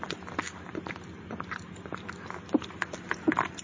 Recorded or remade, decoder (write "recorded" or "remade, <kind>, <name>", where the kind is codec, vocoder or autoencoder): recorded